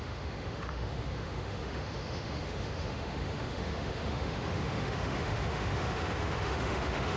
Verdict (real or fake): fake